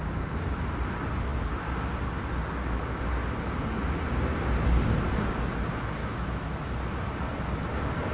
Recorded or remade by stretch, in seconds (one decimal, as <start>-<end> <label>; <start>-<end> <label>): 0.0-6.0 recorded; 6.0-6.7 remade; 6.7-8.1 recorded